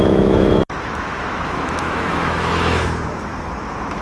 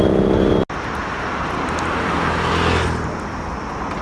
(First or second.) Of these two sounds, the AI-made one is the first